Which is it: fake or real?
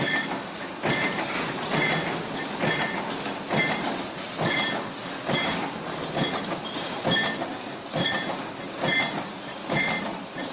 real